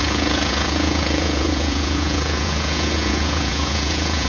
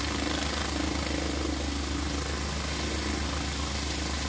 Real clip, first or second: second